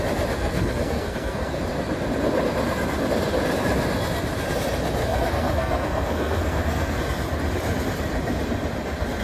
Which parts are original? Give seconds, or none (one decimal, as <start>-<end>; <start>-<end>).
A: 0.0-0.4; 1.6-5.0; 7.0-9.2